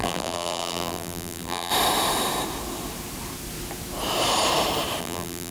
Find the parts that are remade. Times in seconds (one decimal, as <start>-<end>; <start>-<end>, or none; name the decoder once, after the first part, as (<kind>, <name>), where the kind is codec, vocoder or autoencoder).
0.0-1.7 (vocoder, BigVGAN v2); 5.0-5.5